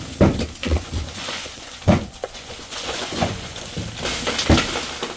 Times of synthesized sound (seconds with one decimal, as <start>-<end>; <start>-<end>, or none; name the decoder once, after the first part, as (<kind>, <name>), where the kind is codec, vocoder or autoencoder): 0.6-3.7 (vocoder, Vocos)